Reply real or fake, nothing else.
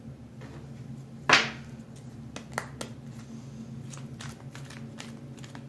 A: real